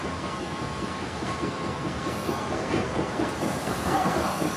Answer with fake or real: fake